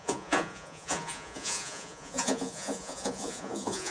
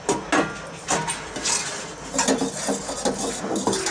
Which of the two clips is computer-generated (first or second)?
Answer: first